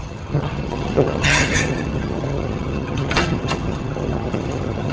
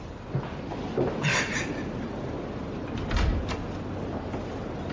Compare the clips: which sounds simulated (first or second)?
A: first